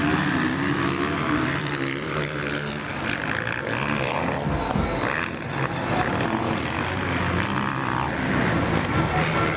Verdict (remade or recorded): recorded